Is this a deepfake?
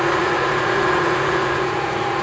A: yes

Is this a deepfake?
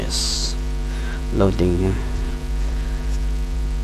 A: yes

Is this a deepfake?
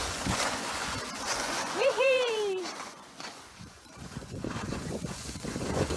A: yes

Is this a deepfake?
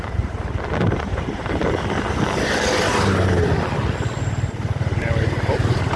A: no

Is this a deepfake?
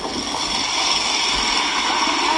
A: no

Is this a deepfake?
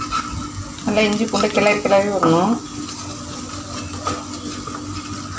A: no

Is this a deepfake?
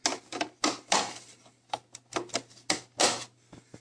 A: no